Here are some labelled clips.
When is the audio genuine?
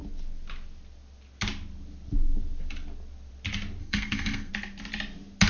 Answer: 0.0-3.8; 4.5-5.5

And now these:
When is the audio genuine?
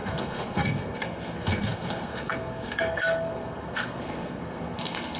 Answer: none